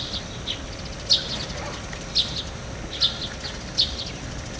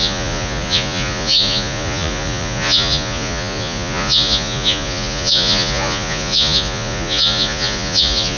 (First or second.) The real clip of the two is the first